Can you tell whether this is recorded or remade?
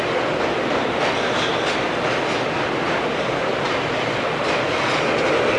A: recorded